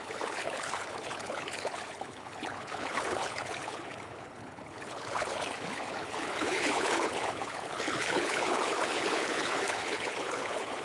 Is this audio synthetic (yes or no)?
yes